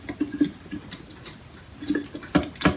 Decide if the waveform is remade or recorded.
recorded